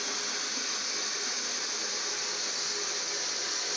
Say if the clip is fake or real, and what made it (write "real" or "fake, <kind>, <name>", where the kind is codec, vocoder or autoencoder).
real